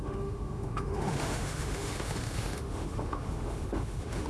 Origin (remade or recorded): remade